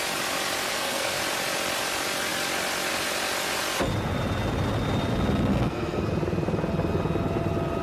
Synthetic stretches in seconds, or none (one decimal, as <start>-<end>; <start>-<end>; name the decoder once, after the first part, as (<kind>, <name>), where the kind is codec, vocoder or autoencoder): 0.6-1.2 (codec, SNAC); 5.5-6.1

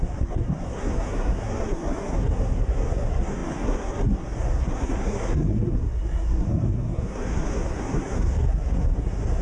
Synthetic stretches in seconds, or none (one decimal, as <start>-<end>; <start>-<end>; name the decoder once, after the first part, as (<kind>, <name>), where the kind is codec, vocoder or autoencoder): 0.0-9.4 (codec, SNAC)

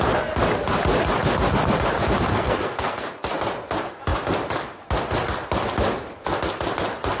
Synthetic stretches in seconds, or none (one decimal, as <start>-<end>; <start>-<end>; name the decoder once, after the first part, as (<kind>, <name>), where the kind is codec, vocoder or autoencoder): 2.3-3.1 (codec, SNAC)

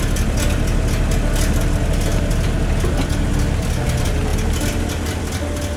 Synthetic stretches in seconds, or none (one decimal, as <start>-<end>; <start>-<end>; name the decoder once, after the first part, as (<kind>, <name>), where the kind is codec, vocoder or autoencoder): none

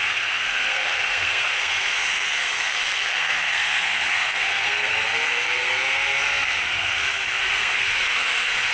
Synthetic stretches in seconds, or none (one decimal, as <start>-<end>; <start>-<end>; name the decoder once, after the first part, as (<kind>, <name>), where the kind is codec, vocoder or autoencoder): 0.0-8.7 (codec, SNAC)

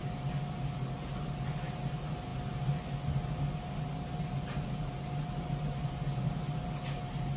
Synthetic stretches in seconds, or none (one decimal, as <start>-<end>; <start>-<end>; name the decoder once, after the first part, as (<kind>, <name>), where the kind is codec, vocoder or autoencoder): none

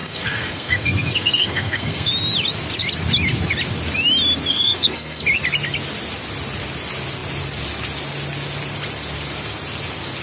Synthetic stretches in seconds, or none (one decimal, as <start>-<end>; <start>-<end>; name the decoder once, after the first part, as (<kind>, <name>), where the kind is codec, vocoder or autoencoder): 0.0-2.1 (codec, SNAC); 4.5-5.2

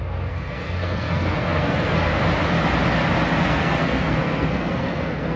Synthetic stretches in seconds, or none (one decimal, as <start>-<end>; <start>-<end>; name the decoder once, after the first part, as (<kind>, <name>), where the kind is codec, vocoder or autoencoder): 0.0-2.1 (codec, SNAC); 3.4-5.4